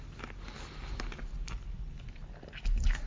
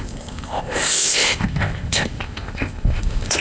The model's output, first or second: second